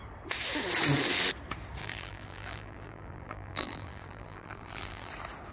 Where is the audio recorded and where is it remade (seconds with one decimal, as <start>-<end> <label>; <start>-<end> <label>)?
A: 0.0-1.8 recorded; 1.8-5.1 remade; 5.1-5.5 recorded